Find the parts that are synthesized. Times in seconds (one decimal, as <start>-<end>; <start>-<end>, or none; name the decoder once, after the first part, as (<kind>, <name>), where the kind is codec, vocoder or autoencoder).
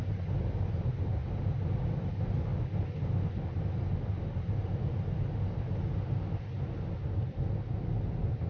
none